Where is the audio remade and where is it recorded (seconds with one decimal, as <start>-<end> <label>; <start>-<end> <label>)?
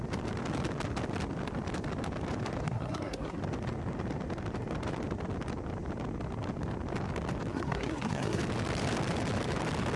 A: 0.0-2.6 recorded; 2.6-3.4 remade; 3.4-7.5 recorded; 7.5-8.4 remade; 8.4-10.0 recorded